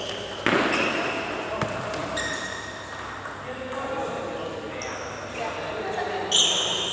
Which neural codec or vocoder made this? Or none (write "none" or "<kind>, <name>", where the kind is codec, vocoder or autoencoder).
none